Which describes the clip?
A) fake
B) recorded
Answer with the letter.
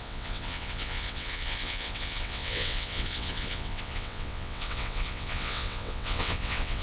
A